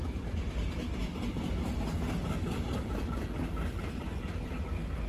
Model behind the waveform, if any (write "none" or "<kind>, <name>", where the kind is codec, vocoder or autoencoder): none